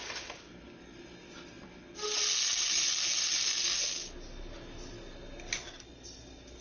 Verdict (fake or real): real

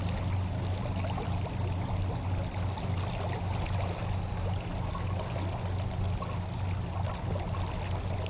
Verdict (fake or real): real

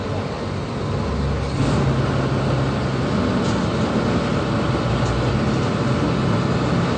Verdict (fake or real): real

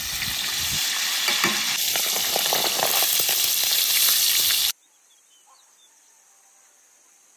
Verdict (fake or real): real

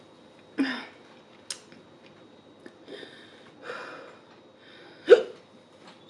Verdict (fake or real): real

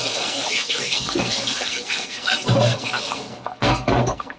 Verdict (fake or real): fake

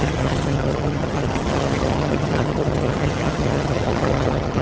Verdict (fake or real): fake